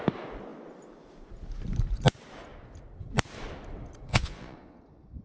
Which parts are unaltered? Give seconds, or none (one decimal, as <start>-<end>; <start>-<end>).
0.0-4.1; 4.8-5.2